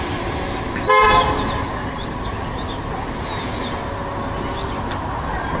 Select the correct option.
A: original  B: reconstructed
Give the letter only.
A